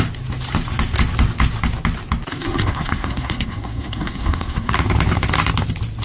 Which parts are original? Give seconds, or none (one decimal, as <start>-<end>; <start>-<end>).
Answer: 0.0-2.3; 4.7-6.0